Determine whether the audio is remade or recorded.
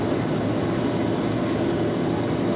recorded